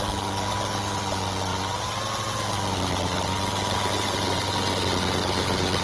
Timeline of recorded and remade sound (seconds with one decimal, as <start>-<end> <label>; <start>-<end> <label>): 0.0-5.8 recorded

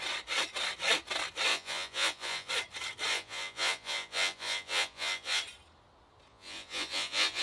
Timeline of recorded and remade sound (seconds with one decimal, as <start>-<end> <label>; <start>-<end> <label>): 0.0-1.5 recorded; 1.5-2.5 remade; 2.5-3.1 recorded; 3.1-5.4 remade; 5.4-6.3 recorded; 6.3-7.4 remade

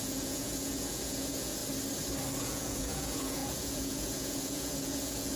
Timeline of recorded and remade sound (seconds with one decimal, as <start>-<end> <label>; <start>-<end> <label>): 0.0-1.6 remade; 1.6-2.4 recorded; 2.4-5.4 remade

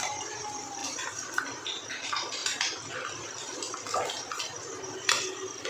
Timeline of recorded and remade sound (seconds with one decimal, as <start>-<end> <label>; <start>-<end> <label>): 0.0-5.7 recorded

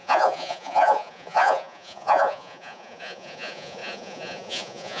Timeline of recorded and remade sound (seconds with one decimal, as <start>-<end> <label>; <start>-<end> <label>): 0.0-5.0 remade